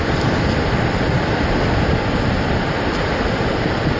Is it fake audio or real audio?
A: real